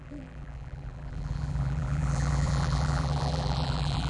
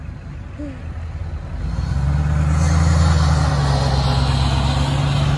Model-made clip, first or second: first